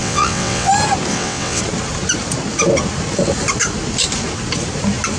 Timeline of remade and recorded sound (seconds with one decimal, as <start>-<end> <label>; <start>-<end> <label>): 0.0-0.7 remade; 0.7-1.1 recorded; 1.1-1.6 remade; 1.6-5.2 recorded